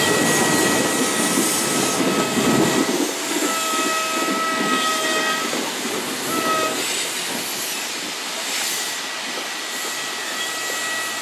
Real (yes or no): yes